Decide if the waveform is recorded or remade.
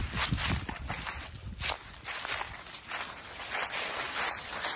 recorded